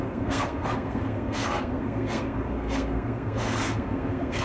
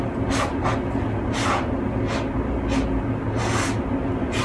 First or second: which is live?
second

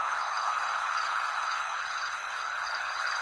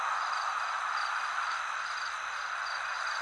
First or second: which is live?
second